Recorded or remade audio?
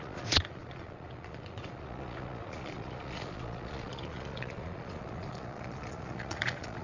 remade